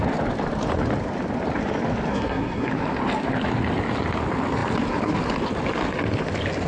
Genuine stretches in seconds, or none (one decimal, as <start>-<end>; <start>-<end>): 0.0-2.1; 2.7-6.7